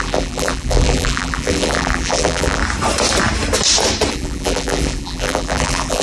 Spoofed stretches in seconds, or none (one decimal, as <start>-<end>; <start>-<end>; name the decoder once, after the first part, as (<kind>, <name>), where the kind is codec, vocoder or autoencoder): 0.0-2.6 (vocoder, BigVGAN v2); 4.1-6.0